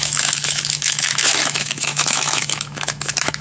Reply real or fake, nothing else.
fake